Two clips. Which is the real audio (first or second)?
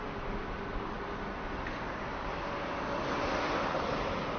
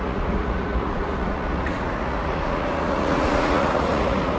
first